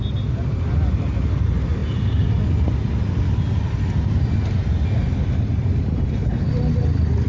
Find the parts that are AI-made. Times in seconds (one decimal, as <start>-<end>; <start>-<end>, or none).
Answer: 5.9-6.5